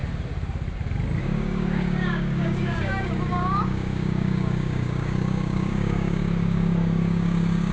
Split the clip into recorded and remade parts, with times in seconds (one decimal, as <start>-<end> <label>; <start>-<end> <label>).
0.0-1.2 recorded; 1.2-7.7 remade